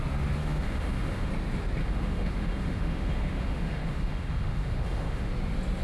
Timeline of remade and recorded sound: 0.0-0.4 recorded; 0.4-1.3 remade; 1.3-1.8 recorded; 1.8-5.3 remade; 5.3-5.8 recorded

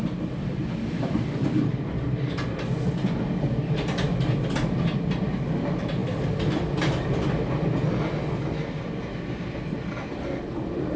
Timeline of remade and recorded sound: 0.0-11.0 recorded

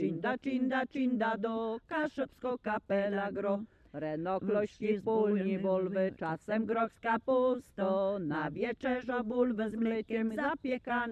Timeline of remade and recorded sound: 0.0-11.1 recorded

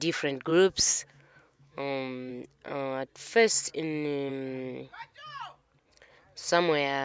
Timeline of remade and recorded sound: 0.0-0.5 recorded; 0.5-2.3 remade; 2.3-7.0 recorded

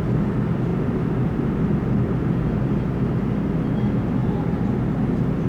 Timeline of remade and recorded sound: 0.0-5.5 recorded

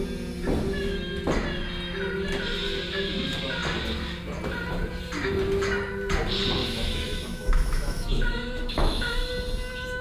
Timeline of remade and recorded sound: 0.0-6.6 recorded; 6.6-9.3 remade; 9.3-10.0 recorded

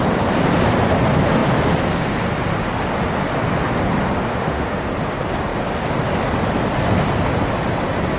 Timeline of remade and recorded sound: 0.0-4.3 recorded; 4.3-4.8 remade; 4.8-8.2 recorded